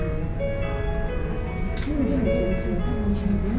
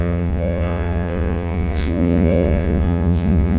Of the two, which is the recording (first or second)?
first